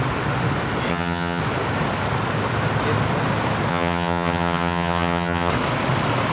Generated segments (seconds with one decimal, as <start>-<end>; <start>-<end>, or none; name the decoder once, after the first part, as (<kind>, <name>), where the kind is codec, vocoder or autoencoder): 0.9-1.4 (vocoder, HiFi-GAN); 3.7-5.5